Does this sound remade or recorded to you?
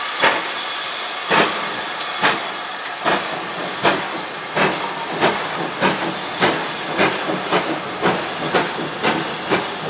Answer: recorded